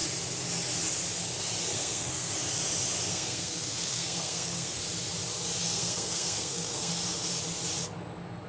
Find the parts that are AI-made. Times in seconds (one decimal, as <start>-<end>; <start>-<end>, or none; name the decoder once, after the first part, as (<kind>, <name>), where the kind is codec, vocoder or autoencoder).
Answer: 1.7-2.3 (codec, SNAC); 3.1-4.8; 5.6-6.9